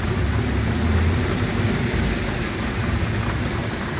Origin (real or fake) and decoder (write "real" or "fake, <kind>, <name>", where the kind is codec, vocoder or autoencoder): real